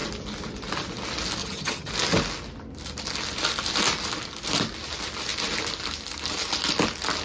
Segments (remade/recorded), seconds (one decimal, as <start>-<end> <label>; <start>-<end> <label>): 0.0-1.4 recorded; 1.4-1.9 remade; 1.9-7.2 recorded